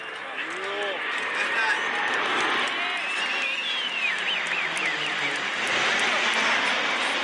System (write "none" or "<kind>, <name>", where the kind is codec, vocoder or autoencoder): none